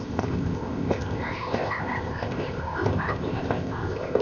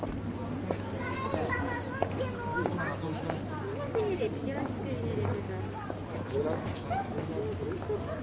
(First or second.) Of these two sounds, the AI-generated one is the first